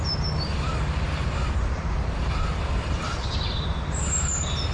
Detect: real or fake fake